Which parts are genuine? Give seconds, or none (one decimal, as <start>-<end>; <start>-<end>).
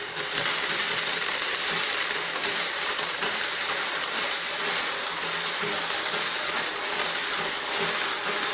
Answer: 0.0-1.1; 5.1-8.5